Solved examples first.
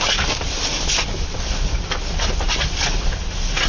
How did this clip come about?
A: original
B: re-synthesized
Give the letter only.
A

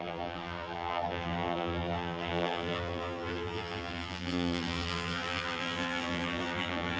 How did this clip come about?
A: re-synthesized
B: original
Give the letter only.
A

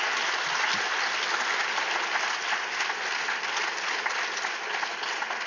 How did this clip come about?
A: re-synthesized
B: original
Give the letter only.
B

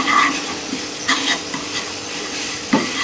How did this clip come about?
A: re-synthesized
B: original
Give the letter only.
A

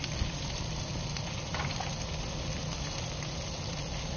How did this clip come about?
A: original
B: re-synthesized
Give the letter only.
A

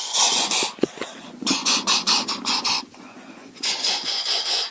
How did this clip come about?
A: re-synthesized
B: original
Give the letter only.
A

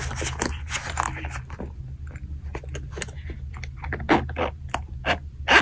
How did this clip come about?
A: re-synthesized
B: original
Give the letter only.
B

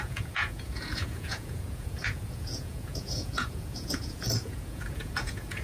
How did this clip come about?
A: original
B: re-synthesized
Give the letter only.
B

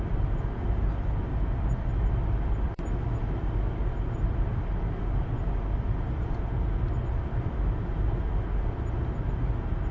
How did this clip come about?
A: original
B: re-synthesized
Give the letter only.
A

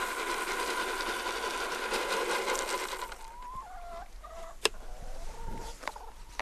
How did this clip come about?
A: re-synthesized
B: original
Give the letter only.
B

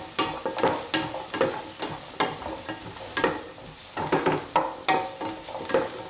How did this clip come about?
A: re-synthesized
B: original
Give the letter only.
B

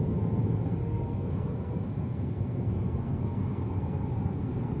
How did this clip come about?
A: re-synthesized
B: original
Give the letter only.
A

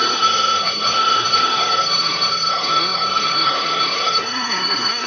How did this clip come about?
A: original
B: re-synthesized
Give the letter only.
B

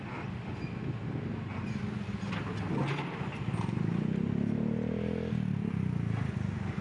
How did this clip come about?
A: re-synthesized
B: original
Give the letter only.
B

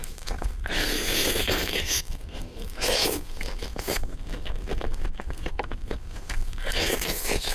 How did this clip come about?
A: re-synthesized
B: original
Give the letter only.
A